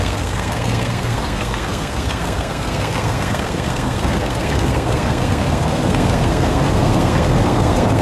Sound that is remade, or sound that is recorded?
remade